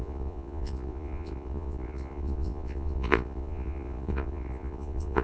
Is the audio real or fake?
fake